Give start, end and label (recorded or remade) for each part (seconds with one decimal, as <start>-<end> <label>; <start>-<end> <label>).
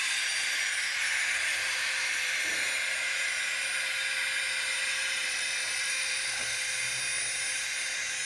0.0-1.5 recorded; 1.5-2.4 remade; 2.4-5.0 recorded; 5.0-6.7 remade; 6.7-8.2 recorded